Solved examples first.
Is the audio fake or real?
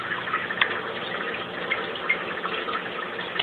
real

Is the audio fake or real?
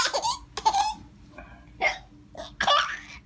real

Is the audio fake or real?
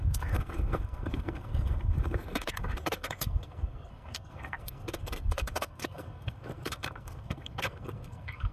fake